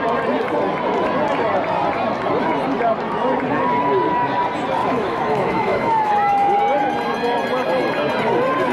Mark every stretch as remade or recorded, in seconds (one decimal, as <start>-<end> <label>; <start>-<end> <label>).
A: 0.0-4.8 recorded; 4.8-6.6 remade; 6.6-8.7 recorded